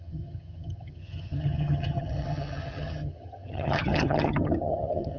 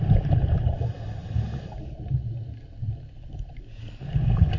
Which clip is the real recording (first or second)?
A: second